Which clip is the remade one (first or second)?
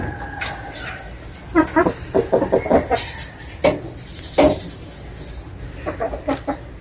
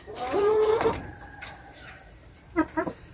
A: second